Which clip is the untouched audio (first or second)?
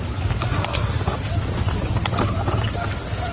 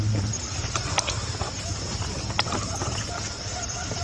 first